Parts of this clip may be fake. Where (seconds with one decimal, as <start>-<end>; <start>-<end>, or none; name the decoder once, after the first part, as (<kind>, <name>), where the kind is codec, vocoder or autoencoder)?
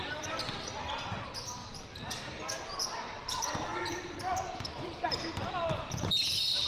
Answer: 0.0-1.6 (vocoder, BigVGAN v2); 2.3-3.7; 4.5-5.2; 6.1-6.7